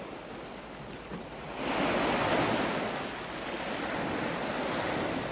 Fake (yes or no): no